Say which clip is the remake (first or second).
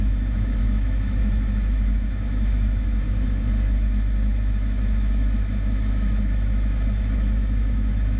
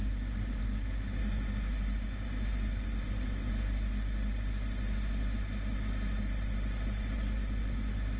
first